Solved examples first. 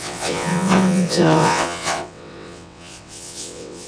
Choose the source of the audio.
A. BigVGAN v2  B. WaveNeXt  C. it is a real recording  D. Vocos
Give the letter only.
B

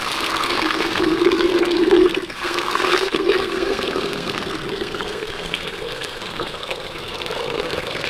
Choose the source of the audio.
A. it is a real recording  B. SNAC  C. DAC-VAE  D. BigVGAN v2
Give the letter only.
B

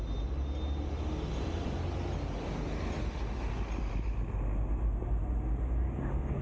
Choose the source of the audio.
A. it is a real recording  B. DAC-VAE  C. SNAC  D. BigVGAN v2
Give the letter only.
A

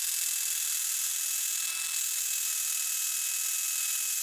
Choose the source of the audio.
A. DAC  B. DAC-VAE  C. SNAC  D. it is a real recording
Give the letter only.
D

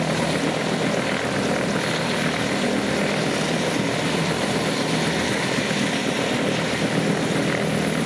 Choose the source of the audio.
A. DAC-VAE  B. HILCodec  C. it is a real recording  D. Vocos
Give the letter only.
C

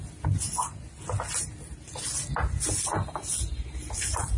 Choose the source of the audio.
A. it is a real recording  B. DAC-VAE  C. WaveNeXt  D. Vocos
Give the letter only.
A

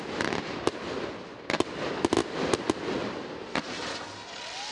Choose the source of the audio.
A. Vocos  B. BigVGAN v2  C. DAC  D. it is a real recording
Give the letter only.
D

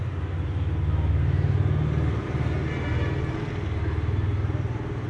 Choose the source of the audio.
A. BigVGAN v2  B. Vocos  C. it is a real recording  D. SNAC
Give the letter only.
C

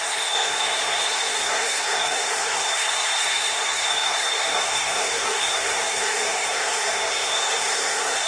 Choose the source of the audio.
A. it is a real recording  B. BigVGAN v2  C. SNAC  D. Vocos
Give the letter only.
C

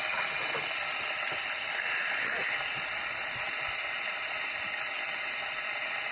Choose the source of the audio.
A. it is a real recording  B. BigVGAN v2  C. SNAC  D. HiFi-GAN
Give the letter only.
A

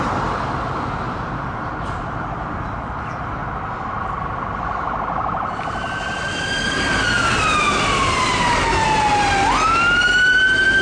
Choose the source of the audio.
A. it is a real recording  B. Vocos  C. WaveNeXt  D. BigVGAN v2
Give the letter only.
A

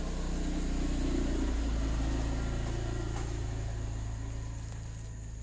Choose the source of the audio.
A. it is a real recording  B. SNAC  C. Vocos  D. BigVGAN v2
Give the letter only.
A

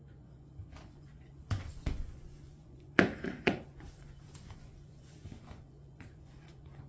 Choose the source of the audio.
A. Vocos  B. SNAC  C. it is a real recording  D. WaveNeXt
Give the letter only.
A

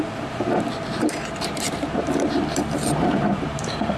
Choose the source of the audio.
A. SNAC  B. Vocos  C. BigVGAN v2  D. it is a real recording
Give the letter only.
C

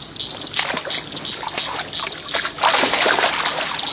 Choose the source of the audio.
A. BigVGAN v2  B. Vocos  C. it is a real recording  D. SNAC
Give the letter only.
C